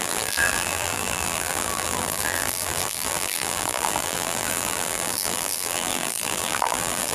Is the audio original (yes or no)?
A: no